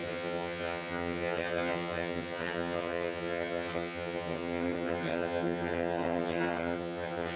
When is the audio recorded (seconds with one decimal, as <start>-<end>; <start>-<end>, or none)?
none